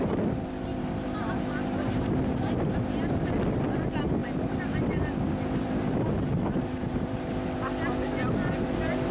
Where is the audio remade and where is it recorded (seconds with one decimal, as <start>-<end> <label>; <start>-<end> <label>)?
0.0-0.7 recorded; 0.7-3.3 remade; 3.3-4.2 recorded; 4.2-7.3 remade; 7.3-9.1 recorded